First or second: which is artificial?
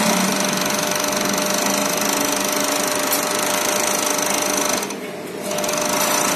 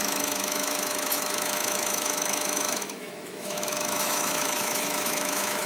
second